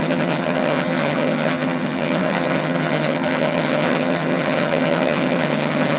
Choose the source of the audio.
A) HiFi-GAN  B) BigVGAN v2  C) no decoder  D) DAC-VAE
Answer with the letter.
A